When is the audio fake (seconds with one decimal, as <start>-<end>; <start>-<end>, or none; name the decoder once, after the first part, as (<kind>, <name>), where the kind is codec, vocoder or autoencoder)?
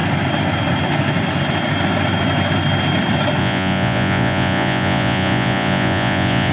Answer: 3.4-6.5 (vocoder, Vocos)